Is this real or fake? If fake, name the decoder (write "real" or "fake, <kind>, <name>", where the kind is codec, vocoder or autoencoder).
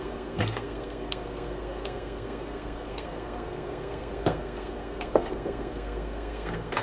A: fake, codec, SNAC